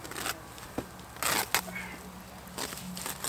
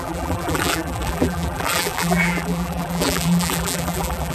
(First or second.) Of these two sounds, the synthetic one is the second